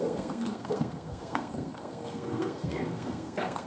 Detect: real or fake fake